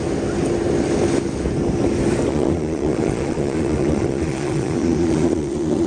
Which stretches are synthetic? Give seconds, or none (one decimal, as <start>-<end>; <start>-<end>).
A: 2.3-5.9